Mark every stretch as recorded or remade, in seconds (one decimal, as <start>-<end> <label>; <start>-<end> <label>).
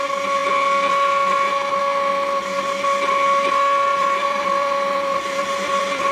0.0-3.9 recorded; 3.9-6.1 remade